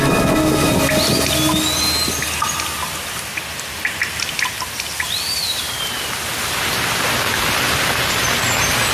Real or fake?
real